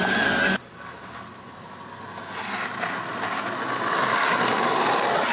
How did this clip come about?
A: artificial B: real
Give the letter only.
B